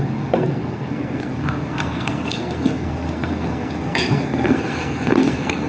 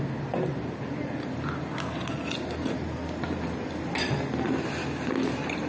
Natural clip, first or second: second